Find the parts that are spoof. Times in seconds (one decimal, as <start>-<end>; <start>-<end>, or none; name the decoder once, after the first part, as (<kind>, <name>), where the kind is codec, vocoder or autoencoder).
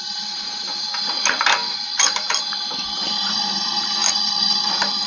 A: none